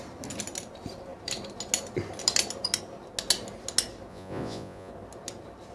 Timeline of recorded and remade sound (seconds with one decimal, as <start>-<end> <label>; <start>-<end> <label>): 0.0-4.1 recorded; 4.1-4.9 remade; 4.9-5.7 recorded